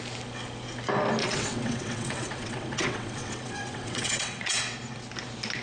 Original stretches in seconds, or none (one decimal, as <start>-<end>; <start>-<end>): 0.0-1.2; 4.6-5.6